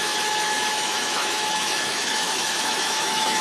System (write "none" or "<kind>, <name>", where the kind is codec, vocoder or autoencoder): autoencoder, DAC-VAE